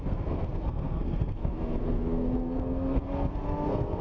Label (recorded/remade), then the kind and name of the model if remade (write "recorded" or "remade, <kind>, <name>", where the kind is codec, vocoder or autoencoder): remade, codec, SNAC